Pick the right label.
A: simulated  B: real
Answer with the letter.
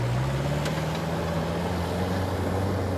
B